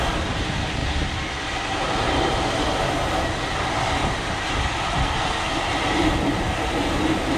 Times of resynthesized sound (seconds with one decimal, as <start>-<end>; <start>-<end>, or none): 5.0-5.5